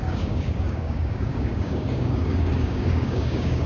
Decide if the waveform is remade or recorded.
remade